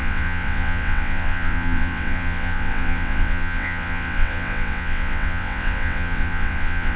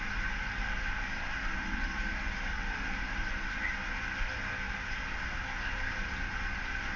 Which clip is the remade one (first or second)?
first